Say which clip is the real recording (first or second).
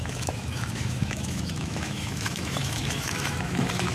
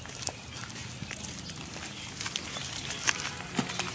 second